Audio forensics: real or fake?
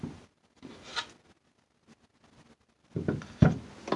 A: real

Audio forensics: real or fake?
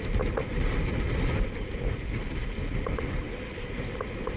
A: real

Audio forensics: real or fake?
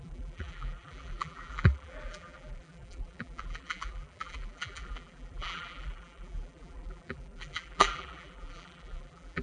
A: fake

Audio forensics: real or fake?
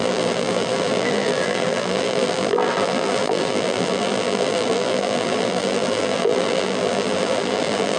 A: fake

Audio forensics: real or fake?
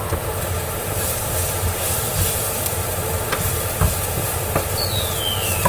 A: fake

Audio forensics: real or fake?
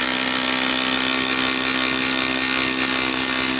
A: real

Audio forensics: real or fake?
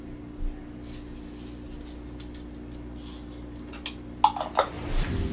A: real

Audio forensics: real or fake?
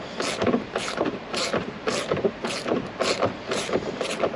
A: fake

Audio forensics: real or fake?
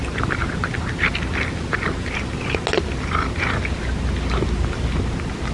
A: real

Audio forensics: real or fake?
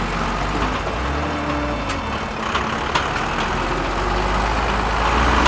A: real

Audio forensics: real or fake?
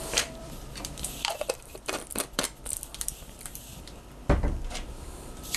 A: fake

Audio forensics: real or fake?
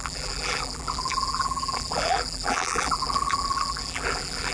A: fake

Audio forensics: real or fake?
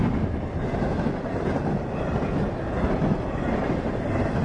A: real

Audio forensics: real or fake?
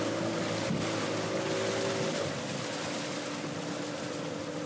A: real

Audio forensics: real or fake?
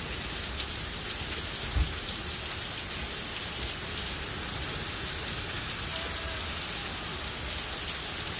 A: real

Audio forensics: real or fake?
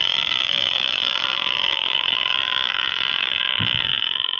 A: fake